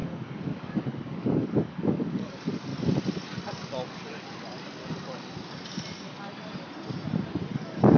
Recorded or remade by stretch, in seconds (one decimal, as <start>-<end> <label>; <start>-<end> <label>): 0.0-2.7 remade; 2.7-7.5 recorded; 7.5-8.0 remade